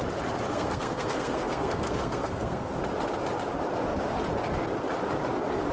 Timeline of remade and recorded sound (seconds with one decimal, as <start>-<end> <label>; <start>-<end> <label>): 0.0-0.5 recorded; 0.5-2.7 remade; 2.7-5.7 recorded